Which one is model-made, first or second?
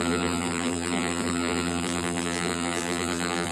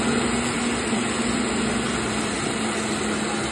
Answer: first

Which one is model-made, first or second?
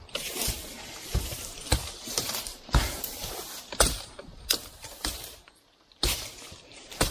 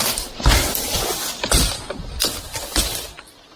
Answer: first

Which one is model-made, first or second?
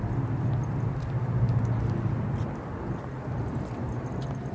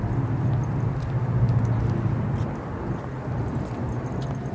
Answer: first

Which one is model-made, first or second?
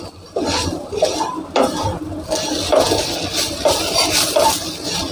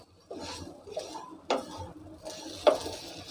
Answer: first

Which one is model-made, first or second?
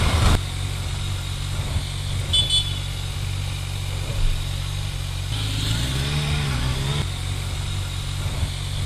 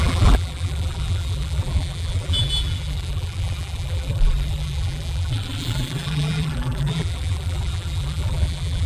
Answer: second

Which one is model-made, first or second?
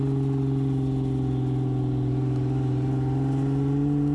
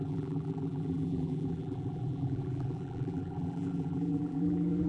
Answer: second